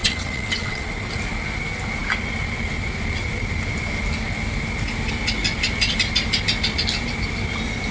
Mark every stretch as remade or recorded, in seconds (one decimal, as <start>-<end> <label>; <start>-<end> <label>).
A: 0.0-0.9 remade; 0.9-7.9 recorded